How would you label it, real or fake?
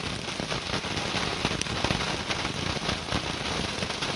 real